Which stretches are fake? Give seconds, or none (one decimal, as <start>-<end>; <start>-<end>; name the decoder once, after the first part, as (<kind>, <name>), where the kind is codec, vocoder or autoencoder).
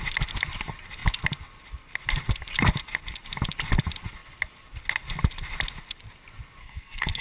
6.6-7.2 (codec, SNAC)